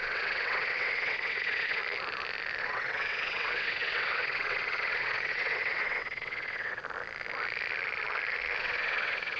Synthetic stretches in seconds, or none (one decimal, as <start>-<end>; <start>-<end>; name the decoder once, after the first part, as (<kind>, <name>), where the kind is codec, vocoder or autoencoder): 0.0-1.8 (vocoder, WaveNeXt); 2.6-6.8; 8.6-9.4